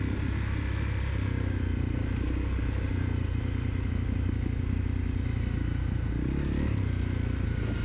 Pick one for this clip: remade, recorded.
recorded